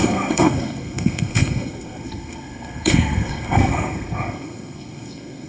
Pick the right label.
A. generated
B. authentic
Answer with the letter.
A